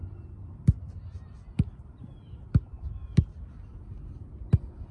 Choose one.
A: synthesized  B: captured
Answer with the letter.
B